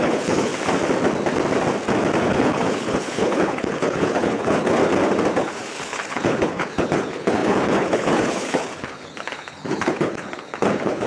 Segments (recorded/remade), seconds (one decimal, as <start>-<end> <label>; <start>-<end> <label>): 0.0-0.5 remade; 0.5-2.2 recorded; 2.2-4.8 remade; 4.8-5.4 recorded; 5.4-11.1 remade